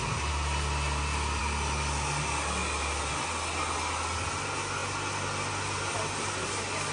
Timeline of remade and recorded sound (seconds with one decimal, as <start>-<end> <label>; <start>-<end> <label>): 0.0-6.9 recorded